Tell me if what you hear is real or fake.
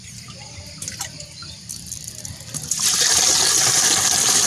real